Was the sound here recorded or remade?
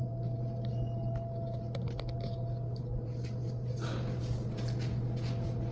recorded